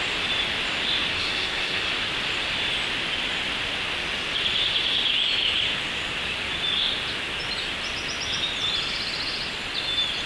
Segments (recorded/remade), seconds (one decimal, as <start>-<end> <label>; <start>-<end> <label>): 0.0-1.1 recorded; 1.1-1.9 remade; 1.9-10.3 recorded